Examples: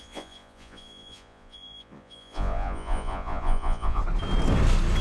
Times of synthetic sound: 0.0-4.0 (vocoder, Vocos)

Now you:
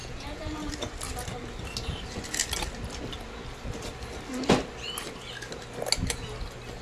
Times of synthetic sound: 0.0-0.7 (vocoder, Vocos)

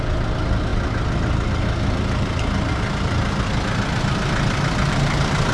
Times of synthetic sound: none

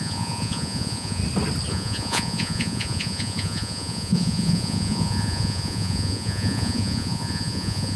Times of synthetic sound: 0.0-1.2 (vocoder, Vocos); 1.7-8.0

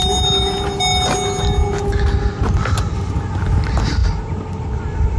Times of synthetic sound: none

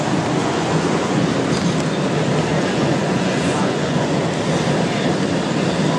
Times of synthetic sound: 0.4-1.3 (vocoder, Vocos); 2.5-4.2

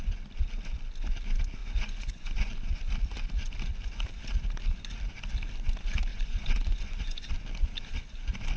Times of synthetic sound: 1.6-2.5 (vocoder, Vocos); 6.1-7.3

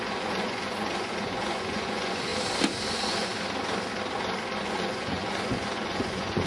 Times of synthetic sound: 0.0-2.3 (vocoder, Vocos); 2.9-3.3; 4.6-6.5